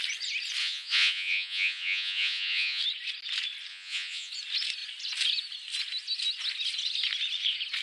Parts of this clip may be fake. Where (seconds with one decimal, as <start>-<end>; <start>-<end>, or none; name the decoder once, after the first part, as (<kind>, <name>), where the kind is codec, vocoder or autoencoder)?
0.6-2.8 (vocoder, Vocos); 3.7-4.3